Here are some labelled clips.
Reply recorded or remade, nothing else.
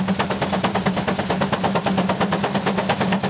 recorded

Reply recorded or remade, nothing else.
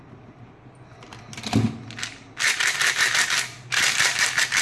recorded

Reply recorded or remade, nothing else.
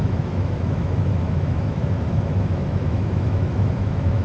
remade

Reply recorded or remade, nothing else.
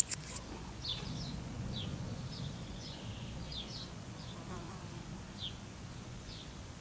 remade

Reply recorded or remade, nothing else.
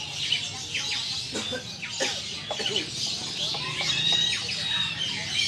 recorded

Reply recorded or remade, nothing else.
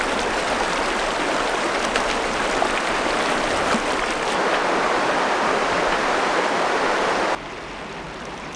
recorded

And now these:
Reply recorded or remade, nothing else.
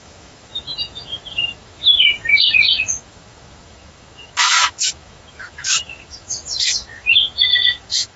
remade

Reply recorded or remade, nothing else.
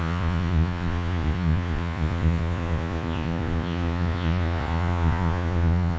remade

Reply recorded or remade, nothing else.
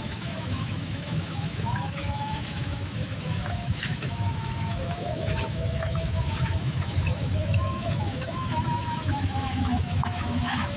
remade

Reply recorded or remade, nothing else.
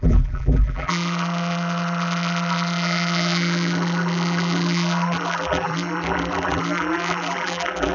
remade